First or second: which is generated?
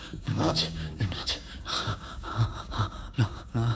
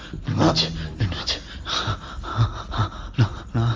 first